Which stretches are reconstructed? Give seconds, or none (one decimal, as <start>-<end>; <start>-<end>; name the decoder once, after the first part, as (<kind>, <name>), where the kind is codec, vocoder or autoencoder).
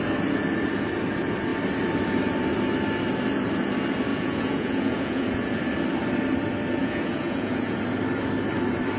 4.1-5.6 (vocoder, Vocos); 6.8-7.8